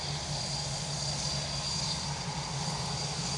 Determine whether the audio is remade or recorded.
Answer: recorded